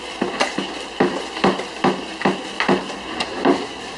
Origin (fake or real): real